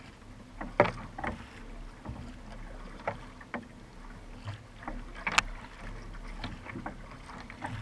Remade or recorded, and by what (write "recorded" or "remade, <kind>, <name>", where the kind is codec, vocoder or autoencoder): recorded